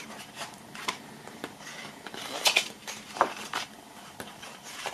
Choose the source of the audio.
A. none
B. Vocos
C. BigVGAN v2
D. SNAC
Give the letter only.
C